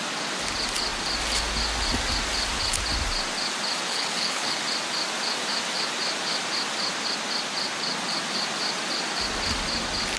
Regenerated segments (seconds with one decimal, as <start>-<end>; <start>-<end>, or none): 3.9-4.6